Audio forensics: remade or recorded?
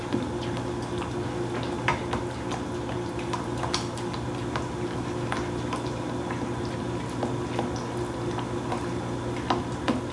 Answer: recorded